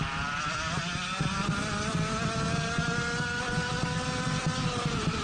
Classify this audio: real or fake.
real